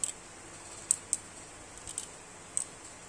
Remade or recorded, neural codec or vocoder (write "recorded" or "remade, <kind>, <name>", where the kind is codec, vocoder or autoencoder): recorded